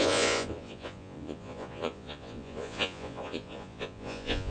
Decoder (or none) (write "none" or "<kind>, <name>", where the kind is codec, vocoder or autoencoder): vocoder, Vocos